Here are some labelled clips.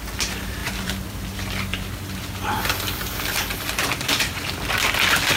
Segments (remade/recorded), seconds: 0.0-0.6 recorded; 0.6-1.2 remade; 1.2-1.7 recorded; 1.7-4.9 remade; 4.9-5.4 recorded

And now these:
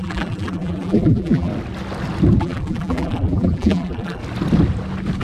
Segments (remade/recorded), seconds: 0.0-1.5 remade; 1.5-2.4 recorded; 2.4-4.2 remade; 4.2-5.2 recorded

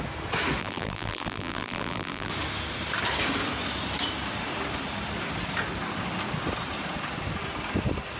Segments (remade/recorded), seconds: 0.0-0.6 recorded; 0.6-2.3 remade; 2.3-8.2 recorded

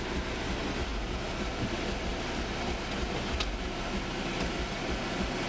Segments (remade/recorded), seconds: 0.0-5.5 recorded

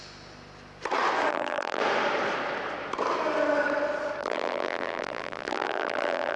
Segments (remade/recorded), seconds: 0.0-1.3 recorded; 1.3-1.8 remade; 1.8-4.2 recorded; 4.2-6.4 remade

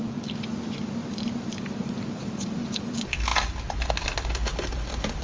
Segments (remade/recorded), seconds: 0.0-1.0 recorded; 1.0-2.9 remade; 2.9-5.2 recorded